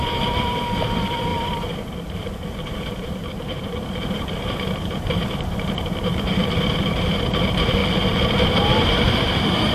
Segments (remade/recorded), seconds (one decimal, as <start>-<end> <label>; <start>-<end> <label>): 0.0-9.7 remade